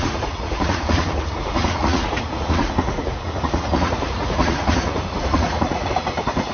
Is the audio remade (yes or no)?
yes